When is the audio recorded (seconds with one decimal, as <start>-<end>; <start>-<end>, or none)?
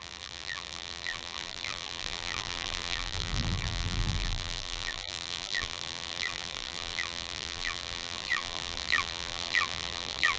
none